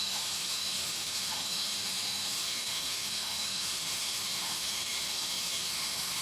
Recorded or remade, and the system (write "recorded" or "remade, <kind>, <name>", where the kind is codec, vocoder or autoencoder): remade, autoencoder, DAC-VAE